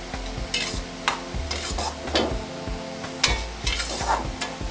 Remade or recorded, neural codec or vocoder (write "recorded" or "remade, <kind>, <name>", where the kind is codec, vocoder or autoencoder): recorded